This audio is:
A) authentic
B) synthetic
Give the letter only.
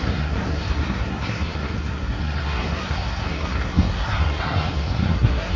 B